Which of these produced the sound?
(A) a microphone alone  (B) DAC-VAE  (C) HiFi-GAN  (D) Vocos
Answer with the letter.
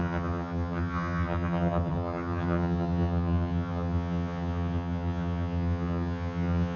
C